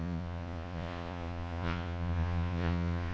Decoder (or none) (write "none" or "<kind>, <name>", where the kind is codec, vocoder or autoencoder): vocoder, Vocos